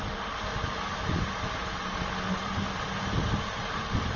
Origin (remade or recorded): recorded